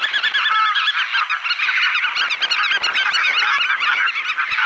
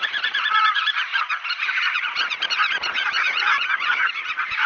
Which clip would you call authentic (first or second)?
first